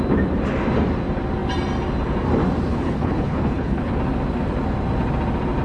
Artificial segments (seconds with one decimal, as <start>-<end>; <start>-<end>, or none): 2.7-3.9